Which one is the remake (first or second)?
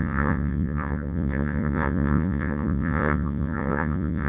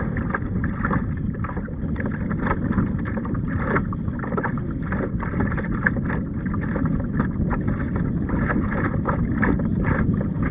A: first